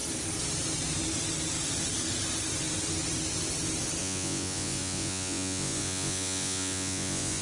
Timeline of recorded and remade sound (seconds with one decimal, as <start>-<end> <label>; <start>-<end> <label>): 0.0-4.0 recorded; 4.0-7.4 remade